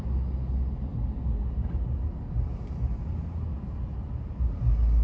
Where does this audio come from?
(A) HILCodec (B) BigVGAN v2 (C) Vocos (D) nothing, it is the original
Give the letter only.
D